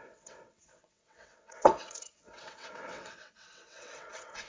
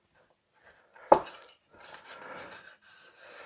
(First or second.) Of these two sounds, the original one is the second